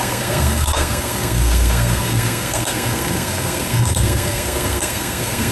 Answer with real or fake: fake